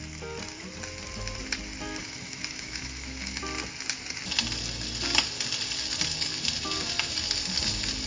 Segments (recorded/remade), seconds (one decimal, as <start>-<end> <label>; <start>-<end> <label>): 0.0-2.0 recorded; 2.0-3.4 remade; 3.4-8.1 recorded